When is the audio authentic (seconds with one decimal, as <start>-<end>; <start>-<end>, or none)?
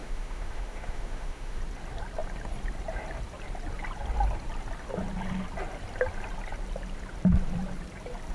1.6-8.3